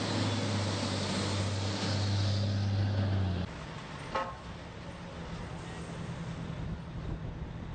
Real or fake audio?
real